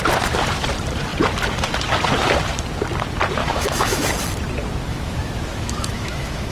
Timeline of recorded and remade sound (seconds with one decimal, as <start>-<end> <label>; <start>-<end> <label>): 0.0-3.4 recorded; 3.4-4.1 remade; 4.1-4.9 recorded; 4.9-6.5 remade